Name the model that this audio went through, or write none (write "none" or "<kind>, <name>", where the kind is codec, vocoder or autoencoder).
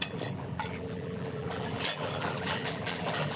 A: vocoder, BigVGAN v2